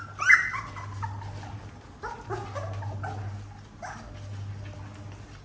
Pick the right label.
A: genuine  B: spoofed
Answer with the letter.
A